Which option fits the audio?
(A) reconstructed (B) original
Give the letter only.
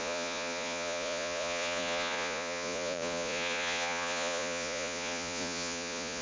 A